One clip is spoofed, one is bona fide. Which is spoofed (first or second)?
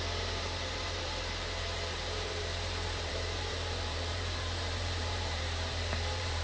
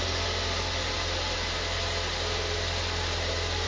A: first